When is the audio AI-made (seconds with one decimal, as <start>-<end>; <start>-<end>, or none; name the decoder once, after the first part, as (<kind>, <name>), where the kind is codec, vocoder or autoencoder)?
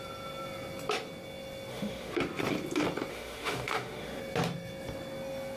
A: 1.7-2.2 (autoencoder, DAC-VAE); 3.1-4.2